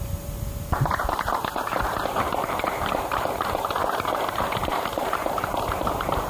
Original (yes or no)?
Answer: no